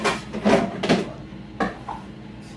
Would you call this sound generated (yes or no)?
no